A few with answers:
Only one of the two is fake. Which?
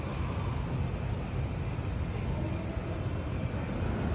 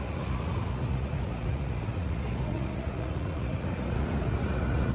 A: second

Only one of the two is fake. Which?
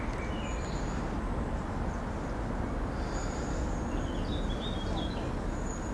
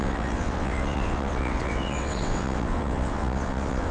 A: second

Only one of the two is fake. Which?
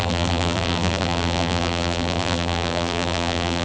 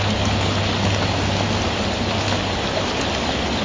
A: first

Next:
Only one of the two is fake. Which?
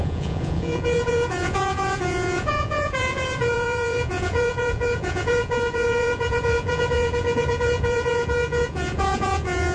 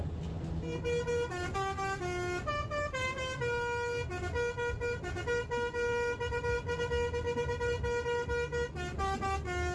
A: first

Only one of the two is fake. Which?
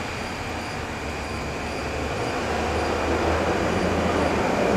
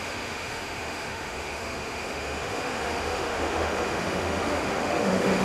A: second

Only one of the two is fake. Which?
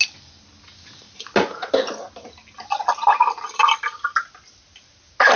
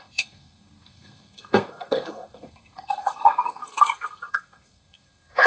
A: second